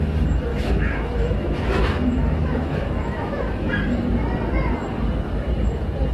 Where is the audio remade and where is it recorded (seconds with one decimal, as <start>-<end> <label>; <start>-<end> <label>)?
0.0-0.5 recorded; 0.5-3.7 remade; 3.7-6.1 recorded

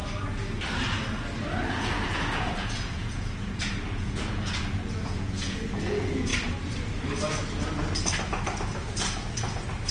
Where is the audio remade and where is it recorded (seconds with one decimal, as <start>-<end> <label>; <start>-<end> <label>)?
0.0-1.7 recorded; 1.7-6.3 remade; 6.3-9.9 recorded

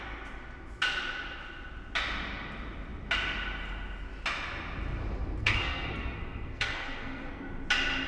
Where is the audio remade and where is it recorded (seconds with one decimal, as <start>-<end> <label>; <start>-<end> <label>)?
0.0-5.4 recorded; 5.4-7.5 remade; 7.5-8.1 recorded

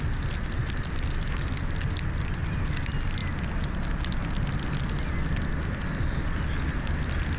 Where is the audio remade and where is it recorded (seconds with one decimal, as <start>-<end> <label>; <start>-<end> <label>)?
0.0-7.4 recorded